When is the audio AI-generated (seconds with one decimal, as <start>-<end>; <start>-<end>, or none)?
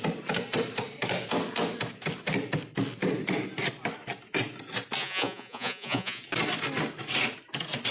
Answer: 5.0-6.2